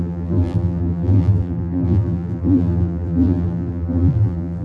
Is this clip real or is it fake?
fake